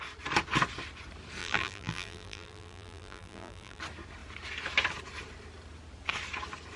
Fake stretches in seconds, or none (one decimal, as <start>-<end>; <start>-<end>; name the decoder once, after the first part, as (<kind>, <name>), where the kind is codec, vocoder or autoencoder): 1.4-3.8 (vocoder, BigVGAN v2)